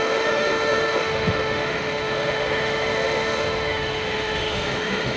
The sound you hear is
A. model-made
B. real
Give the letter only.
A